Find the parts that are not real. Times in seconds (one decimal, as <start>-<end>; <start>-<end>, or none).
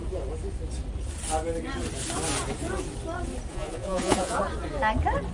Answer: 3.5-4.4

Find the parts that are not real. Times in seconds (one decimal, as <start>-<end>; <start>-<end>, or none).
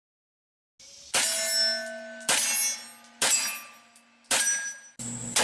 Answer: none